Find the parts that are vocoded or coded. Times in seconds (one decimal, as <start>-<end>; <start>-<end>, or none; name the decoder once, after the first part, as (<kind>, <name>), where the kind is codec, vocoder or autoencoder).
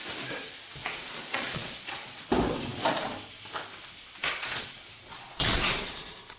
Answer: 0.8-2.2 (vocoder, Vocos); 4.2-6.4